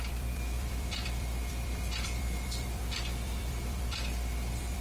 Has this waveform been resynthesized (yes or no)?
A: yes